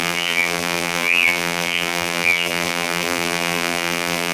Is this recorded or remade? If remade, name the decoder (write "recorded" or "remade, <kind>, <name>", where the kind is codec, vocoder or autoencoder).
remade, vocoder, BigVGAN v2